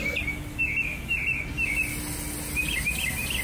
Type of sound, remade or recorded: recorded